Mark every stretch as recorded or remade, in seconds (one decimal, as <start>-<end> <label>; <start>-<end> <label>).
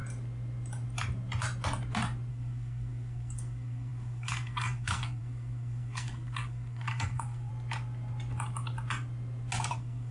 0.0-2.3 recorded; 2.3-7.5 remade; 7.5-9.7 recorded; 9.7-10.1 remade